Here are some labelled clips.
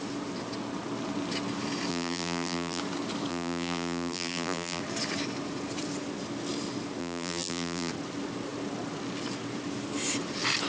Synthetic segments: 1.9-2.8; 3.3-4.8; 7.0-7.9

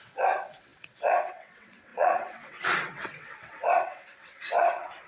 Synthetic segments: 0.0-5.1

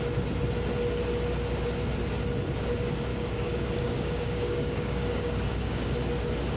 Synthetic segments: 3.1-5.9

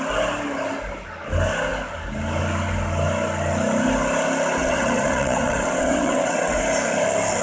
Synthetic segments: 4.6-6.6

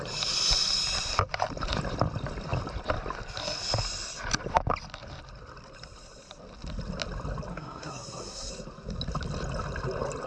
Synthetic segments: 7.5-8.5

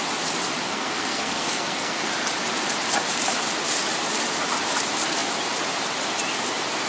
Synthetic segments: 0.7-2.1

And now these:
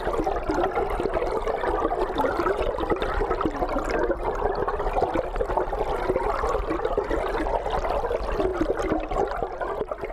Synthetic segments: none